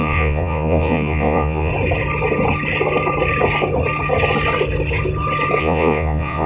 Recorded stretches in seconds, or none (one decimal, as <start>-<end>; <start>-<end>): 1.7-5.6